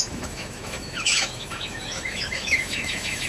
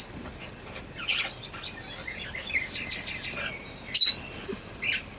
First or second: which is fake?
first